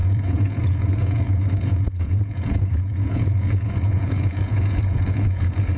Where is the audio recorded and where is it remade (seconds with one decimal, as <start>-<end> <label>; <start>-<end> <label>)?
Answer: 0.0-5.8 remade